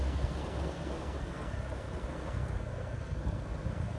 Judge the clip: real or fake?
fake